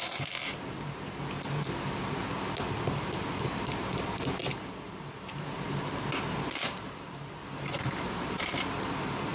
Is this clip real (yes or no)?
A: yes